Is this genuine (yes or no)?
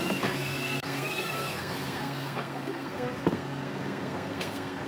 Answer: no